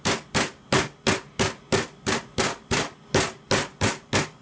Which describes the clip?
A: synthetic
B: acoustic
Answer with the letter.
B